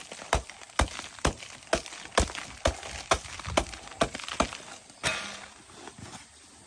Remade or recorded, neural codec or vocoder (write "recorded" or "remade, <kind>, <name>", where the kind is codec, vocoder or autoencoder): recorded